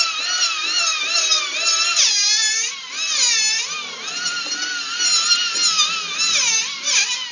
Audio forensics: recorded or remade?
recorded